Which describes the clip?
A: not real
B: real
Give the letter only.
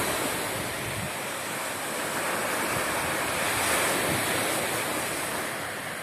B